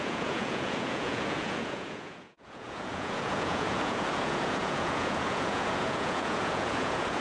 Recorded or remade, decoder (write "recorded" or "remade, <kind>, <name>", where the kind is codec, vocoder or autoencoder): remade, vocoder, Vocos